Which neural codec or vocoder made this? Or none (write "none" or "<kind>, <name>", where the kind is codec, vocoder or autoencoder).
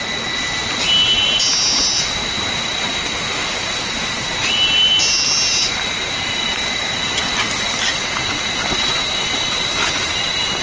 none